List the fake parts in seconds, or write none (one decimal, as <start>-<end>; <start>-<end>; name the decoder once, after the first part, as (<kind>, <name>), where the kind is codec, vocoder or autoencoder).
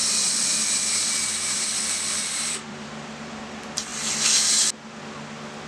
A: 0.0-3.4 (vocoder, BigVGAN v2)